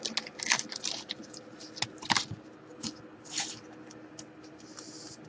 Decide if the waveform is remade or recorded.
recorded